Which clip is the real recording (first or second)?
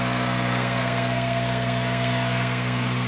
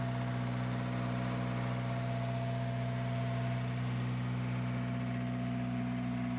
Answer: second